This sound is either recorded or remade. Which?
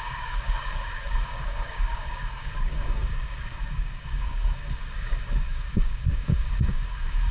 remade